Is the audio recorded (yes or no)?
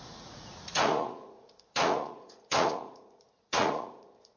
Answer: no